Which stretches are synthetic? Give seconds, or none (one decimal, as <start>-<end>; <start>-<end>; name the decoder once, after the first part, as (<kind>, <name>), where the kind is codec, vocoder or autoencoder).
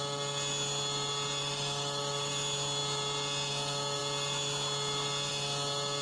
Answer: 1.4-2.3 (autoencoder, DAC-VAE)